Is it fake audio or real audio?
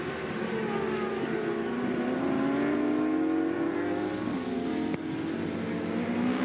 real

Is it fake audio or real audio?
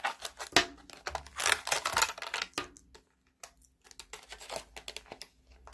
real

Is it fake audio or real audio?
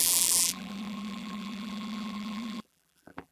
fake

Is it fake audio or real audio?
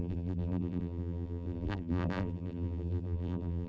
fake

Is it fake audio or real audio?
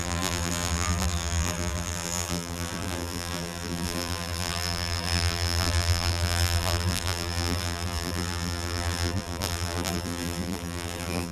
fake